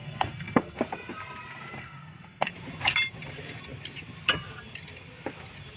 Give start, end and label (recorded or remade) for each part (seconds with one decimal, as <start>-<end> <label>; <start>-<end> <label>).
0.0-0.8 remade; 0.8-1.8 recorded; 1.8-2.5 remade; 2.5-5.8 recorded